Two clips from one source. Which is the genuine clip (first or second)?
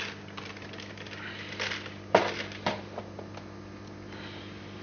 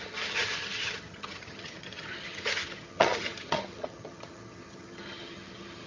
first